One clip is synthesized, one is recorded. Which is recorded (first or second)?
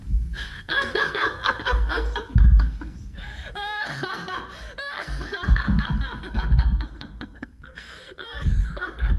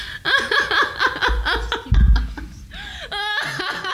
second